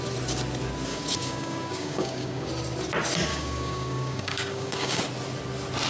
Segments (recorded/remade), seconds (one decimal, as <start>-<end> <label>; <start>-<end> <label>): 0.0-0.9 recorded; 0.9-2.5 remade; 2.5-3.3 recorded; 3.3-5.0 remade; 5.0-5.9 recorded